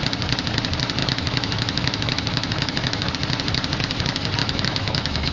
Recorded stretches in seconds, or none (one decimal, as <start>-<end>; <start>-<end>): 0.0-1.0; 3.1-4.4